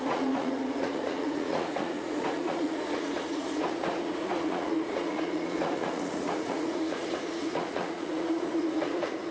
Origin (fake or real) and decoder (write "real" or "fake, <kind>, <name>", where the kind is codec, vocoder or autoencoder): fake, vocoder, Vocos